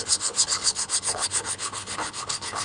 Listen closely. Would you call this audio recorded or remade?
remade